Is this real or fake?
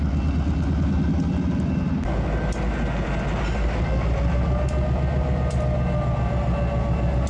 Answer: real